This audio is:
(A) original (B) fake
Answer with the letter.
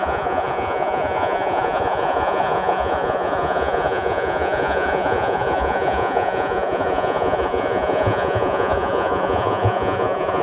B